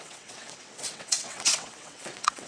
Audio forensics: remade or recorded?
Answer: remade